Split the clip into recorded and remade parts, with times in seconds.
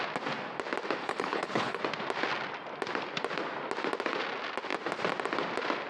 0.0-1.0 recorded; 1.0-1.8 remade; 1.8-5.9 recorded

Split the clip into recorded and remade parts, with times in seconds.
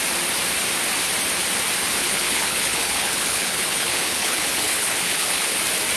0.0-2.0 recorded; 2.0-5.6 remade; 5.6-6.0 recorded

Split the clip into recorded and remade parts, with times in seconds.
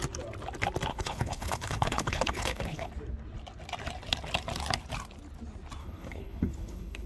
0.0-0.9 recorded; 0.9-2.9 remade; 2.9-5.8 recorded; 5.8-7.1 remade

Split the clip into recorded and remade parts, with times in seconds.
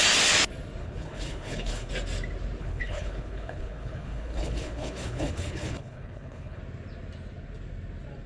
0.0-0.8 recorded; 0.8-1.9 remade; 1.9-2.6 recorded; 2.6-6.6 remade; 6.6-8.3 recorded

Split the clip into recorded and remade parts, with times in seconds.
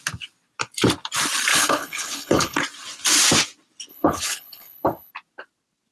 0.0-1.5 recorded; 1.5-2.6 remade; 2.6-3.9 recorded; 3.9-5.1 remade; 5.1-5.9 recorded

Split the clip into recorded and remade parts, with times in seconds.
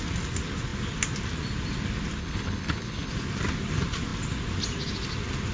0.0-2.2 recorded; 2.2-3.1 remade; 3.1-5.5 recorded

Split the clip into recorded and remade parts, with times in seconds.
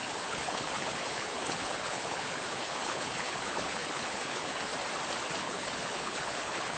0.0-4.7 remade; 4.7-5.4 recorded; 5.4-6.8 remade